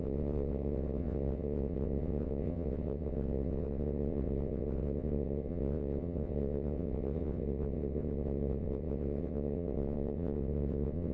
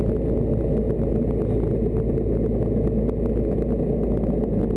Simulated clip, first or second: first